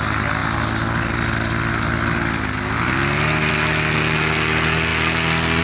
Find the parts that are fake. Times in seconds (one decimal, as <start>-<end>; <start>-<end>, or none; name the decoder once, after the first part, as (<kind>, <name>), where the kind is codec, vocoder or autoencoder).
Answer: none